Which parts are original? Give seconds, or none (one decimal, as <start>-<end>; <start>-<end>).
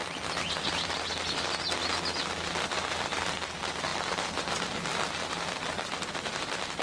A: 0.0-6.8